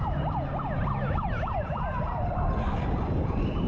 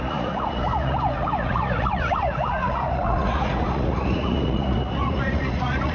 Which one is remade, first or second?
second